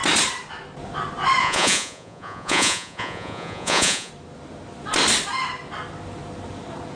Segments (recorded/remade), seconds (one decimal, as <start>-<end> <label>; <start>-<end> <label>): 0.0-1.4 recorded; 1.4-4.1 remade; 4.1-7.0 recorded